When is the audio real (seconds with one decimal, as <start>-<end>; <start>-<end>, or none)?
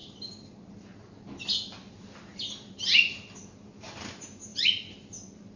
0.0-5.6